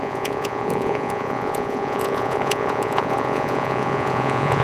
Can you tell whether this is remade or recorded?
remade